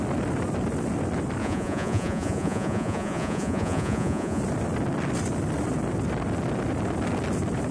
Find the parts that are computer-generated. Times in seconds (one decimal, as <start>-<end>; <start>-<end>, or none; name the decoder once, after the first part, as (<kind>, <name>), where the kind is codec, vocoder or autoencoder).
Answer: 1.4-4.4 (vocoder, Vocos)